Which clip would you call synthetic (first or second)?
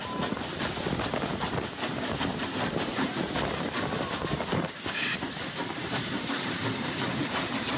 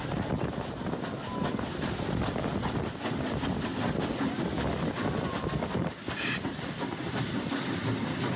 first